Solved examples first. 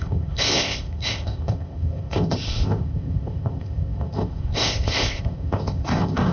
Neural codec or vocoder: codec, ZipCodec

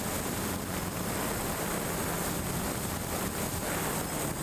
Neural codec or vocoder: none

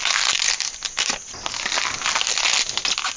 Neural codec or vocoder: none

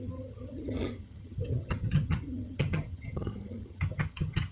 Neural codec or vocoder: vocoder, HiFi-GAN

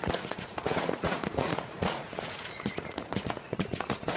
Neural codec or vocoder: vocoder, Vocos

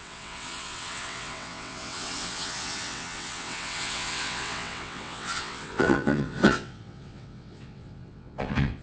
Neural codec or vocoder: vocoder, WaveNeXt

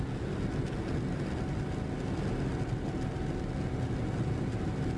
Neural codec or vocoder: none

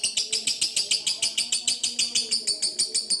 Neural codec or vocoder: none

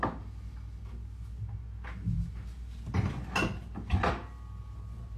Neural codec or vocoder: none